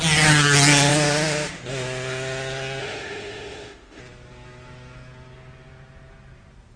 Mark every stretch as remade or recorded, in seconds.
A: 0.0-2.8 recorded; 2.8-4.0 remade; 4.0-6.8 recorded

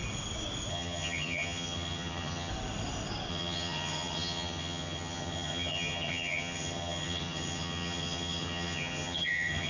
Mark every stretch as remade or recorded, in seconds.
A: 0.0-0.7 recorded; 0.7-2.5 remade; 2.5-3.3 recorded; 3.3-9.7 remade

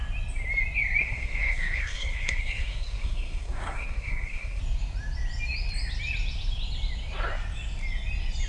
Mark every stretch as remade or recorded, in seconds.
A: 0.0-1.0 recorded; 1.0-4.6 remade; 4.6-8.5 recorded

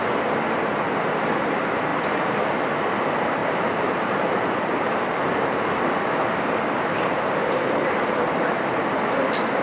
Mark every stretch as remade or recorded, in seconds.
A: 0.0-1.9 recorded; 1.9-2.5 remade; 2.5-3.4 recorded; 3.4-5.7 remade; 5.7-7.4 recorded; 7.4-8.2 remade; 8.2-9.6 recorded

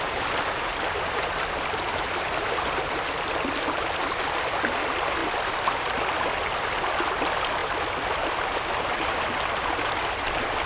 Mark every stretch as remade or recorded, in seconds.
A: 0.0-10.7 recorded